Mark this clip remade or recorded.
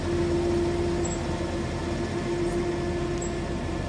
recorded